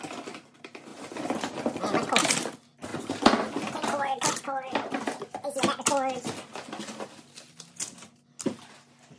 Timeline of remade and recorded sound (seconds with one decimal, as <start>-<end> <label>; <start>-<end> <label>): 0.0-9.2 recorded